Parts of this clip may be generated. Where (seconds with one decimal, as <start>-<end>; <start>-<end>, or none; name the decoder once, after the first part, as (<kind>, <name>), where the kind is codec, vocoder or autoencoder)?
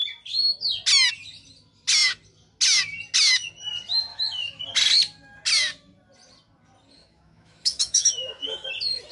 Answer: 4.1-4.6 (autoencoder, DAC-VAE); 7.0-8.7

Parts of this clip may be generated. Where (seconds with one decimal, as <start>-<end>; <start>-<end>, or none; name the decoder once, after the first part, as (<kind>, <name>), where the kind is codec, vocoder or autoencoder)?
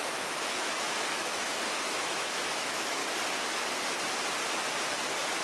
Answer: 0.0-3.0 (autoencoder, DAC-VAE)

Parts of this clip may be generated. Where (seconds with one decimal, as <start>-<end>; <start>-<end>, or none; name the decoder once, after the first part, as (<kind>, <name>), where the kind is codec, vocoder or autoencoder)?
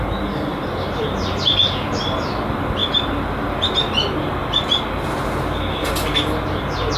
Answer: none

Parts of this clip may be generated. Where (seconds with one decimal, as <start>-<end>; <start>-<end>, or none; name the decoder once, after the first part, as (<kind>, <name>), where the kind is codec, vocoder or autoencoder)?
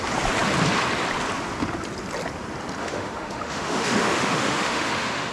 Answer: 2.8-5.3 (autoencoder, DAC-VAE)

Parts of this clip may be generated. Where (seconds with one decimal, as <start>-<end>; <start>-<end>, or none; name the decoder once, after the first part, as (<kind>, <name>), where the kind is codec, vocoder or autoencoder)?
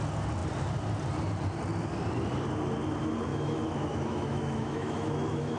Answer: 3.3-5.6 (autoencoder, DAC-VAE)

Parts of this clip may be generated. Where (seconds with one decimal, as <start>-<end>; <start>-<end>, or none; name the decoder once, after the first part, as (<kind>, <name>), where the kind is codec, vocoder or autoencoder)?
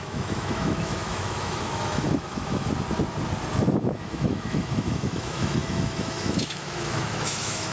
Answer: 0.0-2.7 (autoencoder, DAC-VAE); 3.5-7.7